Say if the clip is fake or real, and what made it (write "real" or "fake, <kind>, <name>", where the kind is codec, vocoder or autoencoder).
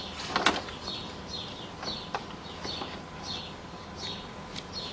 real